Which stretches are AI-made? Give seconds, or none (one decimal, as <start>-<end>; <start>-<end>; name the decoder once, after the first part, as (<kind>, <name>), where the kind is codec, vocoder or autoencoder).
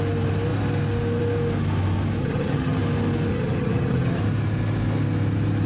2.2-2.8 (vocoder, HiFi-GAN); 3.3-4.2